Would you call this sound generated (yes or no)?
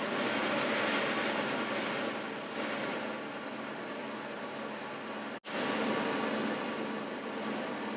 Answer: no